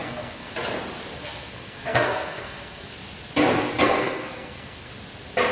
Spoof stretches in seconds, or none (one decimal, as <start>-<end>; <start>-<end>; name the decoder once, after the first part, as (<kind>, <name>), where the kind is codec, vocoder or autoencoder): 0.0-0.5 (codec, SNAC); 1.2-2.9; 3.8-4.9